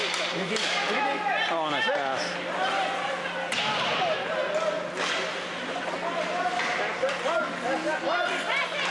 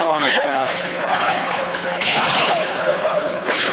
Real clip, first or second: first